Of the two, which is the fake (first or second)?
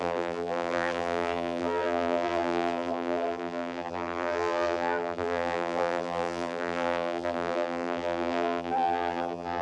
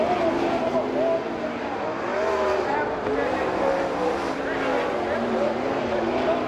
first